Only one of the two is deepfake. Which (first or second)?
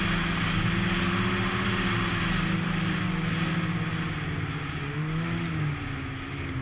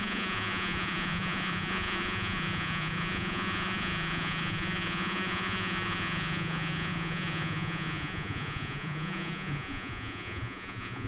second